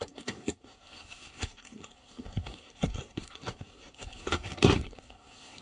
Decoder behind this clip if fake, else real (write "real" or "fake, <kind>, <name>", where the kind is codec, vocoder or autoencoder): fake, codec, SNAC